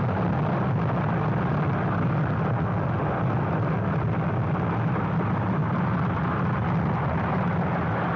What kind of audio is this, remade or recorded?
recorded